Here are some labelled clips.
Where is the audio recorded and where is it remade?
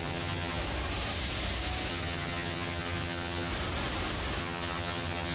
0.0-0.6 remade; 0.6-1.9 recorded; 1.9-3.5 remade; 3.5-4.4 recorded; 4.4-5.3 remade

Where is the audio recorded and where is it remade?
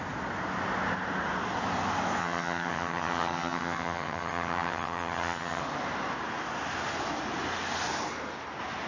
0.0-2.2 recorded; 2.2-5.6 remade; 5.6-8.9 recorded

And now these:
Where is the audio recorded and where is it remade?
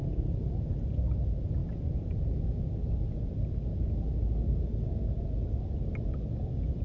0.0-6.8 recorded